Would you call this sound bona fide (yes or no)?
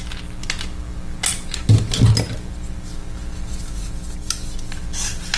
yes